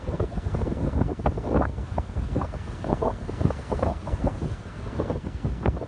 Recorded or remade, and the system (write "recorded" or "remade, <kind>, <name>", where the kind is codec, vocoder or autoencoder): remade, codec, SNAC